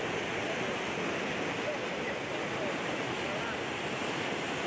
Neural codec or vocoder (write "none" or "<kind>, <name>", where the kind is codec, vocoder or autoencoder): none